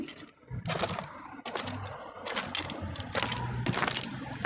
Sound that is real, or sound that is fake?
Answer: real